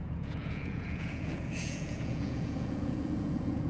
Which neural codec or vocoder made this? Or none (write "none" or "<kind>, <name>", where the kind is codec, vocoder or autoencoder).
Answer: vocoder, Vocos